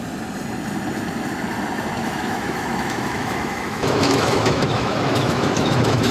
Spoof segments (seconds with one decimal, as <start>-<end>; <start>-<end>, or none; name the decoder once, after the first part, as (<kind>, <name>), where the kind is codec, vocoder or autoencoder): 2.0-6.1 (autoencoder, DAC-VAE)